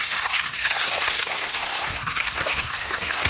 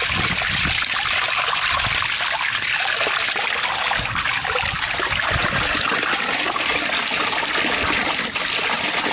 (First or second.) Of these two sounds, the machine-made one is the first